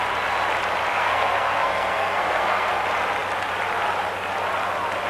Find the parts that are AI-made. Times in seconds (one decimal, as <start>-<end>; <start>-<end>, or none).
0.9-2.7